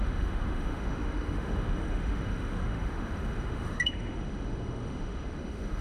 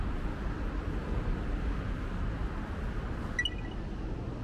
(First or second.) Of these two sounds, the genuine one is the second